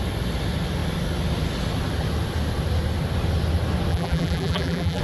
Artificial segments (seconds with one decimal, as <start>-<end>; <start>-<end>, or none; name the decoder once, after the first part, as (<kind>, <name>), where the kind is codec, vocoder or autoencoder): 3.9-5.0 (vocoder, BigVGAN v2)